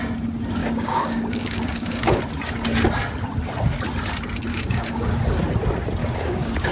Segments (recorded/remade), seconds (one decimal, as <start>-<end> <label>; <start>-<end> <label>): 0.0-0.6 recorded; 0.6-2.2 remade; 2.2-4.5 recorded; 4.5-5.4 remade; 5.4-6.0 recorded; 6.0-6.7 remade